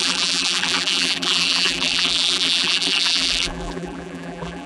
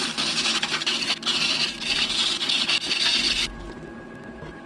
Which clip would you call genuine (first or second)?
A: second